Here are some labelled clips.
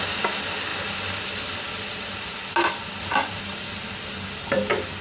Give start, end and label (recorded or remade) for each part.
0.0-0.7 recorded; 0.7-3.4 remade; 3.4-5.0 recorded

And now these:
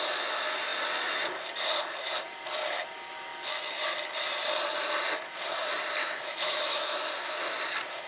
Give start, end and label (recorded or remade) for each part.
0.0-6.0 recorded; 6.0-7.1 remade; 7.1-8.1 recorded

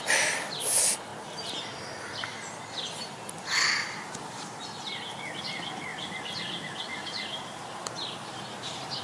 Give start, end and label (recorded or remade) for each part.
0.0-5.9 recorded; 5.9-6.4 remade; 6.4-6.9 recorded; 6.9-9.0 remade

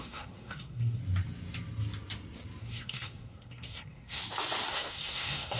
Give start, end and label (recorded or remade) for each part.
0.0-1.0 remade; 1.0-2.6 recorded; 2.6-4.2 remade; 4.2-4.7 recorded; 4.7-5.6 remade

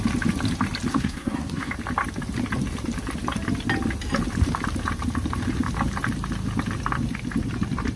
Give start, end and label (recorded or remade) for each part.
0.0-0.9 recorded; 0.9-1.7 remade; 1.7-8.0 recorded

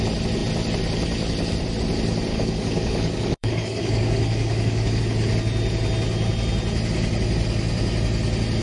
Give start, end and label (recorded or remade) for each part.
0.0-2.3 recorded; 2.3-5.0 remade; 5.0-8.6 recorded

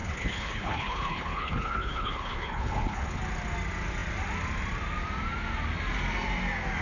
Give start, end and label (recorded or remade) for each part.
0.0-3.2 remade; 3.2-6.8 recorded